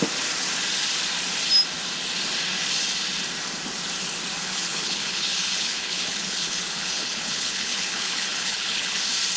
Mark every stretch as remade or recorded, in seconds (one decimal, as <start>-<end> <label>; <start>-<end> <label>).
0.0-4.4 recorded; 4.4-9.0 remade; 9.0-9.4 recorded